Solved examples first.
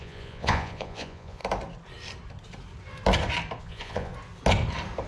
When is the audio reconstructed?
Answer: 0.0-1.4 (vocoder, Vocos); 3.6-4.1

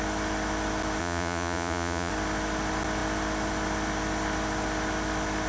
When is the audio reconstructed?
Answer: 1.0-2.1 (vocoder, Vocos)

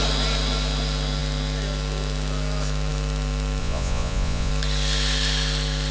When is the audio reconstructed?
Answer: 3.6-4.5 (vocoder, Vocos)

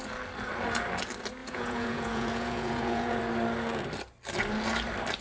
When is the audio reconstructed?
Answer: 1.4-3.2 (vocoder, Vocos)

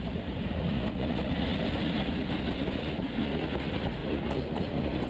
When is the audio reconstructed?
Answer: 0.0-5.1 (vocoder, Vocos)

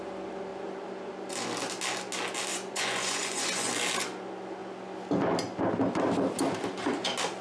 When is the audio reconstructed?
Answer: 2.5-3.7 (vocoder, Vocos)

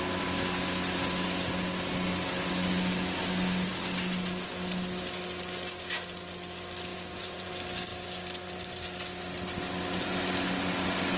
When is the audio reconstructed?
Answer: 6.9-7.5 (vocoder, Vocos)